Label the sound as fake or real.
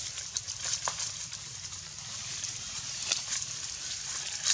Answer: real